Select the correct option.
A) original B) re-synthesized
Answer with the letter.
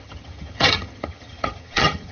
B